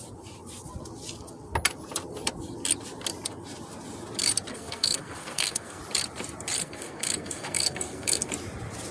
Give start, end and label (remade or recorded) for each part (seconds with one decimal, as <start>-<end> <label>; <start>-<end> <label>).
0.0-4.5 recorded; 4.5-5.8 remade; 5.8-6.6 recorded; 6.6-8.3 remade; 8.3-8.9 recorded